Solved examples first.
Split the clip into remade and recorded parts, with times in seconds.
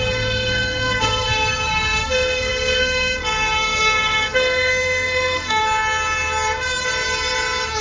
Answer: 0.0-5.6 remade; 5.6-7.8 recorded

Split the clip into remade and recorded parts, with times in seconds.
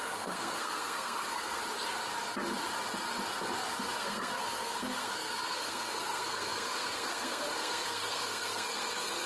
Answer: 0.0-1.6 remade; 1.6-4.0 recorded; 4.0-9.3 remade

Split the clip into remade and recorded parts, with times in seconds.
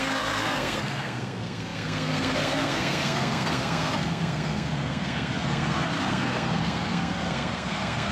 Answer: 0.0-8.1 remade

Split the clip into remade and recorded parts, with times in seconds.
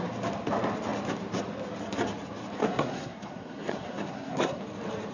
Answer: 0.0-2.6 recorded; 2.6-4.6 remade; 4.6-5.1 recorded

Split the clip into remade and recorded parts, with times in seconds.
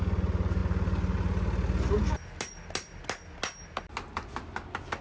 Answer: 0.0-5.0 recorded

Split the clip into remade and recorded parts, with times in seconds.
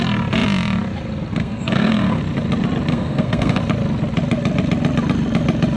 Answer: 0.0-1.4 recorded; 1.4-2.2 remade; 2.2-2.9 recorded; 2.9-3.6 remade; 3.6-5.8 recorded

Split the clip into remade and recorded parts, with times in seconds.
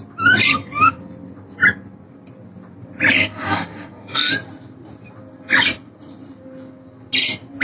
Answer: 0.0-0.5 recorded; 0.5-1.0 remade; 1.0-3.2 recorded; 3.2-4.3 remade; 4.3-7.6 recorded